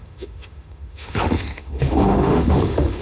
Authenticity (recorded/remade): remade